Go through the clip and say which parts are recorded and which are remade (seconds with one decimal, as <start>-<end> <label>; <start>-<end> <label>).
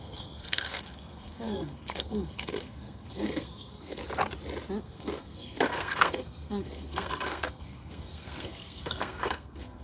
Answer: 0.0-4.0 remade; 4.0-4.8 recorded; 4.8-9.8 remade